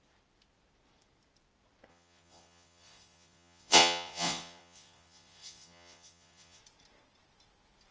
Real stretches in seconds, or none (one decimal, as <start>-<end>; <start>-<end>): 0.0-1.9; 6.6-7.9